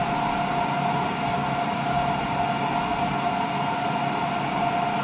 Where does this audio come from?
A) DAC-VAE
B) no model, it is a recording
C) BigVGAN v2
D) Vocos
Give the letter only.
B